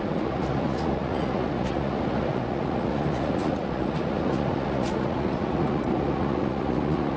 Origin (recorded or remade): remade